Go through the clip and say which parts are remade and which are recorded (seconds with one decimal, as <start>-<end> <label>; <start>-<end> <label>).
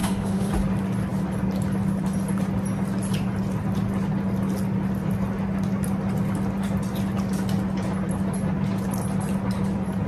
0.0-0.5 remade; 0.5-10.1 recorded